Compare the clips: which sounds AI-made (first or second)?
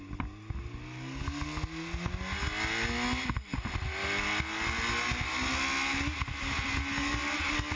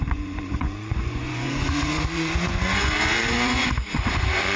second